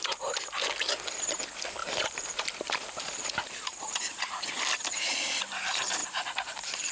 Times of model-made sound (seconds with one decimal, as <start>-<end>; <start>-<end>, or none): 1.8-5.1; 6.0-6.9